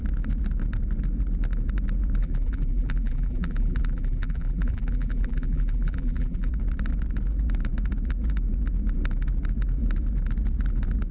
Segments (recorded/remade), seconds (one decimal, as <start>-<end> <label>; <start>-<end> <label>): 0.0-2.2 recorded; 2.2-6.5 remade; 6.5-11.1 recorded